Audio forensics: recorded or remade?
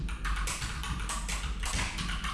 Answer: recorded